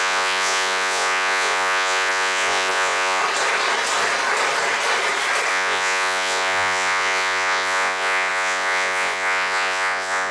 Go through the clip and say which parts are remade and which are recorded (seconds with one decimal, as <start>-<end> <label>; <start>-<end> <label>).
0.0-3.2 remade; 3.2-5.5 recorded; 5.5-10.3 remade